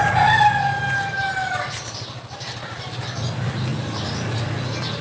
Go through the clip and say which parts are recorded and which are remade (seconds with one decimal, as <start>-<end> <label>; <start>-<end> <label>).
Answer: 0.0-5.0 recorded